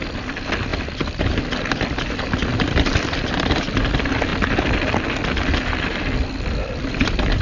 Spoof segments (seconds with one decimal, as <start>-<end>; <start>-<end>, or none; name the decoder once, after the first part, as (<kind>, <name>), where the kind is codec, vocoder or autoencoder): 0.0-4.3 (vocoder, BigVGAN v2); 6.5-7.4